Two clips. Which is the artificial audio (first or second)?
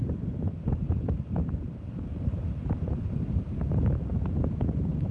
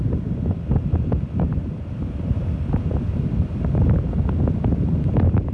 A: first